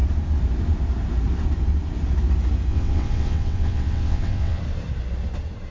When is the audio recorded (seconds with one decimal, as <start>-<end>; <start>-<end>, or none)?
0.0-2.7; 4.6-5.7